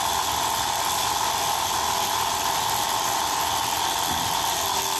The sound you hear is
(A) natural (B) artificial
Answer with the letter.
A